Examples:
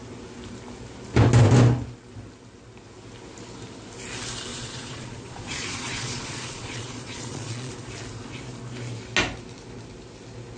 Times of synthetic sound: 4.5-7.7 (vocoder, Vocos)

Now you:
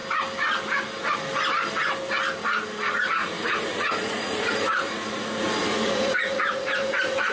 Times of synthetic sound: 3.2-7.3 (vocoder, Vocos)